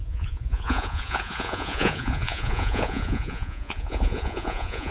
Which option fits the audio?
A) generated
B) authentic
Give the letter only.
A